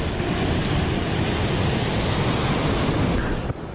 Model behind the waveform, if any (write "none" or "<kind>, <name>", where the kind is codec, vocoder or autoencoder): none